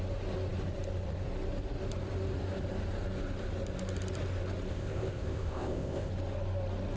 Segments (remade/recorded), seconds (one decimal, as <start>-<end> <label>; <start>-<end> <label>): 0.0-4.7 recorded; 4.7-6.1 remade; 6.1-7.0 recorded